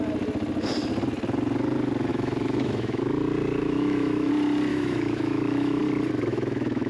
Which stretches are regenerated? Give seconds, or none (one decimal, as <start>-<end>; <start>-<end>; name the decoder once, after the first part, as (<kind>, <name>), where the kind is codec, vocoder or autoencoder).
2.1-3.0 (autoencoder, DAC-VAE); 3.6-4.3; 4.7-5.8; 6.3-6.9